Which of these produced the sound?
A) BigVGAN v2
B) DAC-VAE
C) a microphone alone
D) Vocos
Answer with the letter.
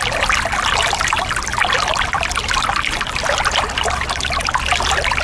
C